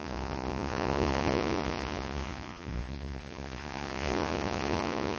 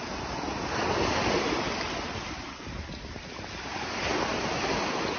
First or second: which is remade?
first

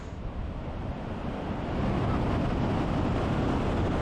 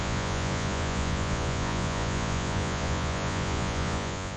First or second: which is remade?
second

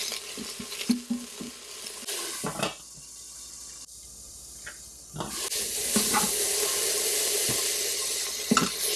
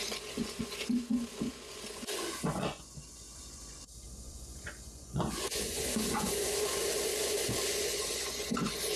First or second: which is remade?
second